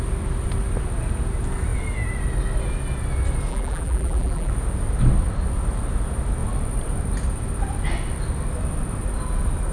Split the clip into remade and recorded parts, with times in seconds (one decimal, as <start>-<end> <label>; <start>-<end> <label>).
0.0-3.5 recorded; 3.5-4.5 remade; 4.5-9.7 recorded

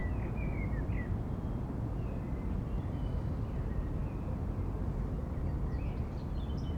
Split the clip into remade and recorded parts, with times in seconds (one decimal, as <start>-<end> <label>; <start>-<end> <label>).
0.0-6.8 recorded